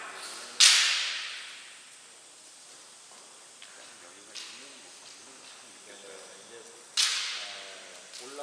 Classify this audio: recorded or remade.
recorded